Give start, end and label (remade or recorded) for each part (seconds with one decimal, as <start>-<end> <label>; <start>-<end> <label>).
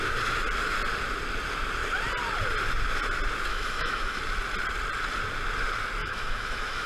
0.0-3.5 recorded; 3.5-4.2 remade; 4.2-6.0 recorded; 6.0-6.9 remade